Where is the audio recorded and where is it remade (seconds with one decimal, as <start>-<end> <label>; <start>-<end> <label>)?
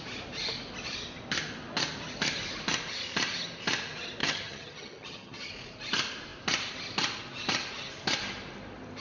0.0-4.2 recorded; 4.2-5.5 remade; 5.5-9.0 recorded